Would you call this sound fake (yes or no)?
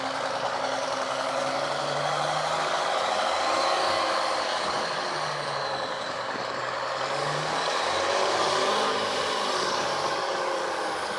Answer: yes